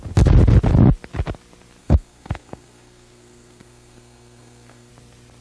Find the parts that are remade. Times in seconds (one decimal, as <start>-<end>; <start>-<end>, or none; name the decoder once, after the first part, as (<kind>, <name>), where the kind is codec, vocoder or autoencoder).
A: 1.8-4.9 (codec, SNAC)